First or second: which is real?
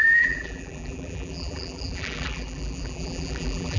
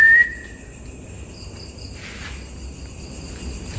second